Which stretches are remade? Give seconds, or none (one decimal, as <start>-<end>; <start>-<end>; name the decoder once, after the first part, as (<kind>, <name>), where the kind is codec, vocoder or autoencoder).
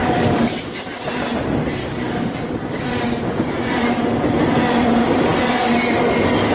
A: 0.0-0.6 (codec, DAC); 1.8-2.3